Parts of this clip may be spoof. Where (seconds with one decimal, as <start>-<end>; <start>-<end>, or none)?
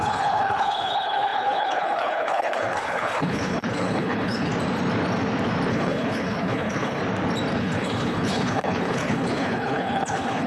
0.0-4.5; 5.7-7.0; 7.6-10.5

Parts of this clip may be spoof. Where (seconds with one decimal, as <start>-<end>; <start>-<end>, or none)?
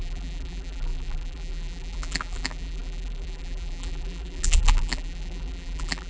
0.0-6.1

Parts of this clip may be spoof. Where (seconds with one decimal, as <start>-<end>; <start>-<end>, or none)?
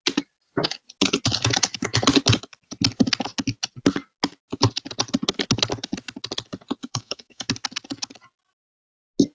6.8-7.5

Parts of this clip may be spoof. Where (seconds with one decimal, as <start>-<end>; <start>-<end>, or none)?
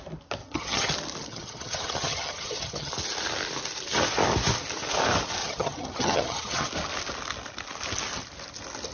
0.4-0.9; 1.3-2.9; 5.4-6.7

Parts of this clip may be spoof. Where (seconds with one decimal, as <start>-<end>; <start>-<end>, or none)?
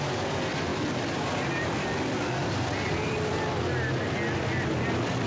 0.7-3.9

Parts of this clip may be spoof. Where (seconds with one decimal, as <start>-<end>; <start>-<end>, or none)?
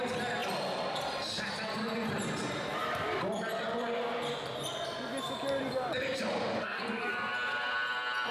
6.6-7.1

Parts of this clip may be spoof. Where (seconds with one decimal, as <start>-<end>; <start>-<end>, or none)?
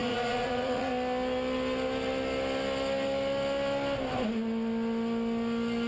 0.0-0.9